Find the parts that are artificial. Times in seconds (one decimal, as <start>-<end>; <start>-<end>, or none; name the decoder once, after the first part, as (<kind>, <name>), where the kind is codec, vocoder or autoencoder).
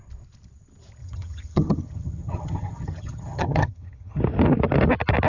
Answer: 1.0-4.2 (vocoder, HiFi-GAN)